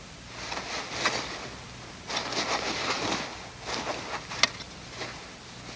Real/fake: real